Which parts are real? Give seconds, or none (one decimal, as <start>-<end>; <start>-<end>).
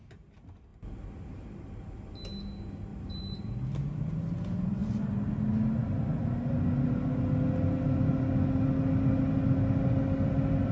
0.0-2.9; 3.5-10.7